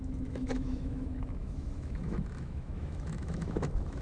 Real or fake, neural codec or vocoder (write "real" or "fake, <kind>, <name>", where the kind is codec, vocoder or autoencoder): fake, autoencoder, DAC-VAE